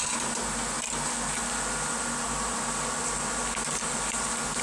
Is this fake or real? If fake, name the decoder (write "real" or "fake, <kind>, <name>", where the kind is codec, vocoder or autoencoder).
real